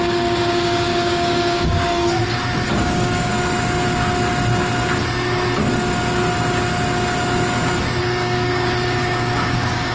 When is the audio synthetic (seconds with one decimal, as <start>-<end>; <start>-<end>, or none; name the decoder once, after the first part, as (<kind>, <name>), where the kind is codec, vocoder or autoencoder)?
0.0-2.2 (codec, DAC); 2.8-3.3; 8.0-9.9